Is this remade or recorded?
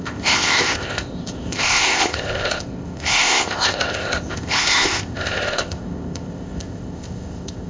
remade